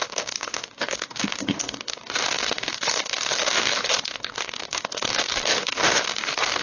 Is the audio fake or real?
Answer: fake